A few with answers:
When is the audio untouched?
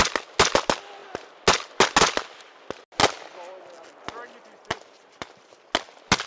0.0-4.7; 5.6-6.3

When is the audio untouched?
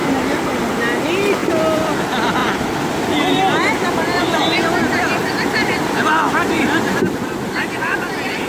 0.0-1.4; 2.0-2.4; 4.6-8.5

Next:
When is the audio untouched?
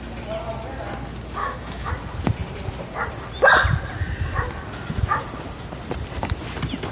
0.0-1.4; 1.9-6.9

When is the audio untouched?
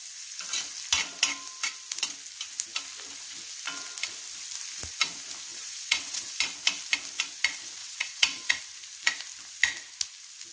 0.0-5.5; 6.4-7.8; 8.6-10.5